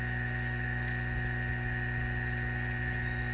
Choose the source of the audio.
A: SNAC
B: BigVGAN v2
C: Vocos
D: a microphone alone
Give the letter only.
D